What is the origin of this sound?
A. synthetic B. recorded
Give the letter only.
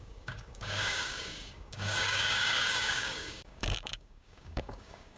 A